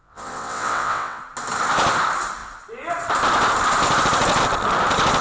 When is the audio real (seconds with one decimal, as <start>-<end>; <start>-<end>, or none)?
1.2-5.2